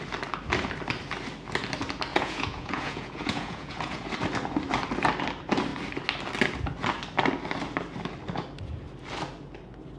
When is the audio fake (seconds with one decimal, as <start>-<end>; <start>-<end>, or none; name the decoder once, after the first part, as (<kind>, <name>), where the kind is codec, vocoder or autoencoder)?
2.1-4.0 (vocoder, Vocos)

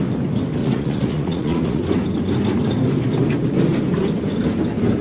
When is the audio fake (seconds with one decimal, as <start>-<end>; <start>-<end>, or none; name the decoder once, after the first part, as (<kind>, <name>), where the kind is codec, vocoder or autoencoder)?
0.6-1.8 (vocoder, Vocos)

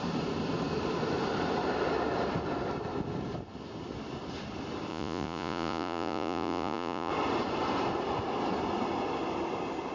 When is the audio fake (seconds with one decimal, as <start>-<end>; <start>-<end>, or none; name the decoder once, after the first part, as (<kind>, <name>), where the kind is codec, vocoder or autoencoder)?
4.9-7.1 (vocoder, Vocos)

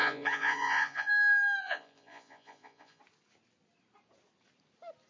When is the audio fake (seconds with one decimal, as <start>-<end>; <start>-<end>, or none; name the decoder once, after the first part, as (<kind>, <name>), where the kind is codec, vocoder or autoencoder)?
0.0-1.1 (vocoder, Vocos); 1.6-3.0

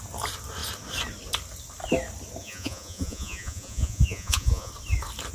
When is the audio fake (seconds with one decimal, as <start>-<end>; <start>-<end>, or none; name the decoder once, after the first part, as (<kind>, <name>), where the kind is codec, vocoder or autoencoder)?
2.4-4.7 (vocoder, Vocos)

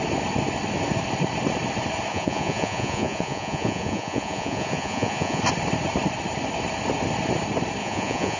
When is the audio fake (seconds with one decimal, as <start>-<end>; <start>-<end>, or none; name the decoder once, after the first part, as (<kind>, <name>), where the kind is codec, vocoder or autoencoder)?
2.1-5.4 (vocoder, Vocos); 7.8-8.4

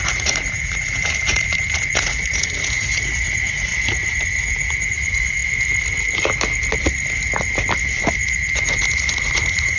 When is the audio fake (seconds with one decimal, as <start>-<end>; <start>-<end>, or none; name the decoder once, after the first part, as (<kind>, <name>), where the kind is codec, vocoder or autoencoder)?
0.0-3.7 (vocoder, Vocos); 4.2-5.4; 8.0-9.8